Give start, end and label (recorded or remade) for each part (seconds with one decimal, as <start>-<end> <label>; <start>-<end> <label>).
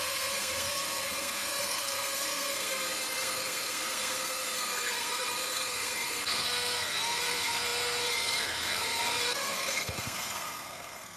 0.0-11.2 remade